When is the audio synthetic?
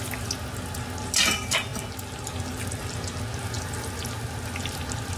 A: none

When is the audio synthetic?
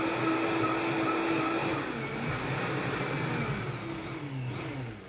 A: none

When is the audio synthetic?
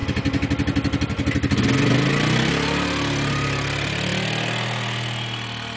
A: none